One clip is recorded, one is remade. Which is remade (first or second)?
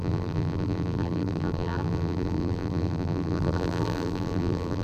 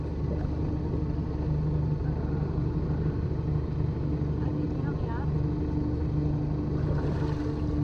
first